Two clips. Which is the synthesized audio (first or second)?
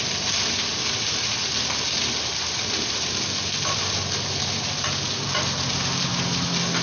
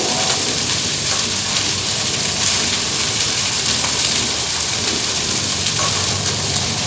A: second